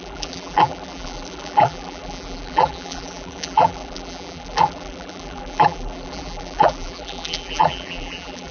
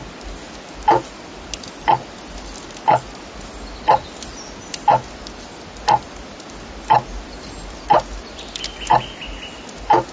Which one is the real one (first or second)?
second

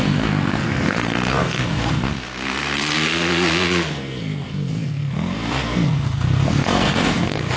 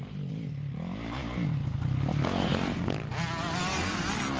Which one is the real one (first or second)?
second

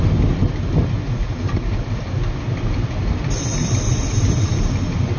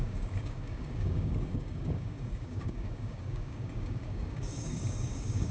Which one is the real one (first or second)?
first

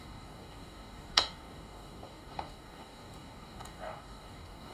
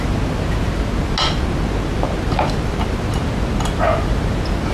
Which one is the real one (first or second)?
second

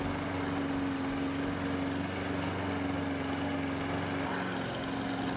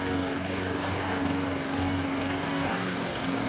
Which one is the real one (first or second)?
first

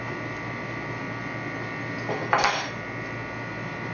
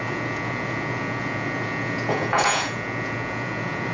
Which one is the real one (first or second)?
first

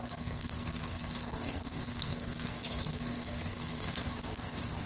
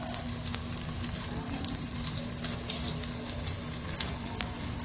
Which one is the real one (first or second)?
second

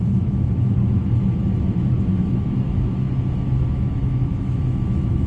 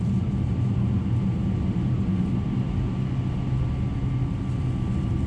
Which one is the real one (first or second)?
second